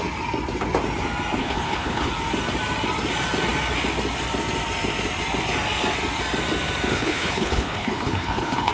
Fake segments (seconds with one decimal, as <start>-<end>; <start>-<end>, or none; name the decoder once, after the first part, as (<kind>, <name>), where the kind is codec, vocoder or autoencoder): 1.4-2.1 (codec, HILCodec); 6.9-8.7

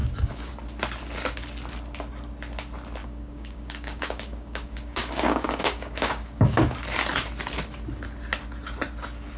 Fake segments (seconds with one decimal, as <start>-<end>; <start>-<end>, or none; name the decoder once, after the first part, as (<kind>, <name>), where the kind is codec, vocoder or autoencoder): 0.0-0.5 (codec, DAC); 3.0-6.6

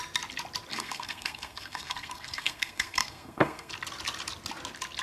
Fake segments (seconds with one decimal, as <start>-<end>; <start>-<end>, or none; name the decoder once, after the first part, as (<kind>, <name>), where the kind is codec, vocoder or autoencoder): 0.7-3.7 (codec, SNAC)

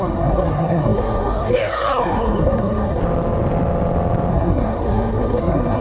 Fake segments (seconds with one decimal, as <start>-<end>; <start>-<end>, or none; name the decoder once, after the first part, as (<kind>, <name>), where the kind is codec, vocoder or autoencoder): 0.0-3.0 (codec, SNAC); 4.3-5.8

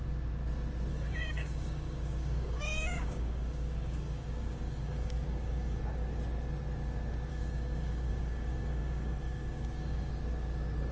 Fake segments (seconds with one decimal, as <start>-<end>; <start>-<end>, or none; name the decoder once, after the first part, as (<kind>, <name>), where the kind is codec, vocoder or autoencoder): 0.9-5.8 (codec, DAC); 7.3-10.1

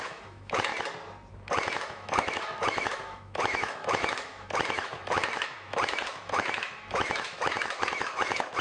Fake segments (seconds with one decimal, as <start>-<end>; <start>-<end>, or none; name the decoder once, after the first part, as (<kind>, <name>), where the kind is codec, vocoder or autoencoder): 0.0-0.7 (autoencoder, DAC-VAE); 1.3-8.6

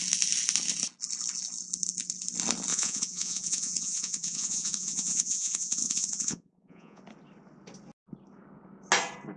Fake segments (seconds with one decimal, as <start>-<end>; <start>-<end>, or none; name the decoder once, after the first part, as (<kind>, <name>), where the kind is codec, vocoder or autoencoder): 2.7-7.0 (vocoder, Vocos)

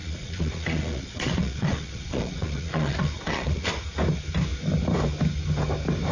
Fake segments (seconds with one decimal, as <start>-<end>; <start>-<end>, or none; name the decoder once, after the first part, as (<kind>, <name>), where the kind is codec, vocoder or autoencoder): 0.0-3.7 (vocoder, Vocos)